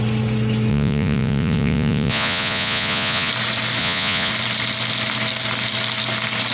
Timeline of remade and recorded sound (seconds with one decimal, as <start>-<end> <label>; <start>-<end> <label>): 0.0-0.7 recorded; 0.7-3.3 remade; 3.3-3.8 recorded; 3.8-4.3 remade; 4.3-6.5 recorded